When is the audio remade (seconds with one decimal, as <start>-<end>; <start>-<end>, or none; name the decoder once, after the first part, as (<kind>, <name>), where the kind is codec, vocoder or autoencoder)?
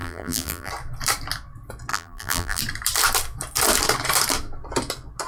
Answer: 0.0-0.7 (vocoder, BigVGAN v2); 1.9-2.6